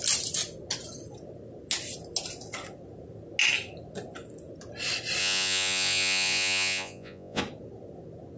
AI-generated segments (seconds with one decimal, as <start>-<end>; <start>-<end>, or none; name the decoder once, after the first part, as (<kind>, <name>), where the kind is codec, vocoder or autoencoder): 5.2-7.4 (vocoder, Vocos)